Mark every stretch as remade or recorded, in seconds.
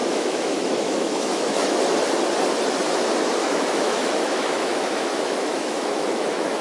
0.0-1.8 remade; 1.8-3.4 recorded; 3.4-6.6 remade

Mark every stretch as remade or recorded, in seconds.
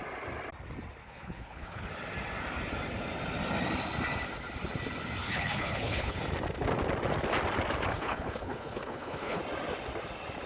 0.0-1.0 recorded; 1.0-1.9 remade; 1.9-5.2 recorded; 5.2-6.2 remade; 6.2-7.9 recorded; 7.9-9.4 remade; 9.4-10.5 recorded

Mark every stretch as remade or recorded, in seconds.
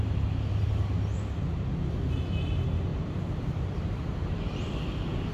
0.0-2.9 recorded; 2.9-3.9 remade; 3.9-5.3 recorded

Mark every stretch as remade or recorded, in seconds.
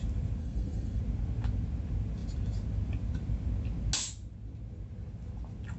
0.0-0.4 recorded; 0.4-1.0 remade; 1.0-5.8 recorded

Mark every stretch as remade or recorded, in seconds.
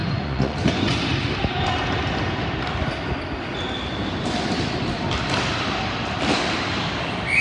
0.0-1.0 remade; 1.0-7.4 recorded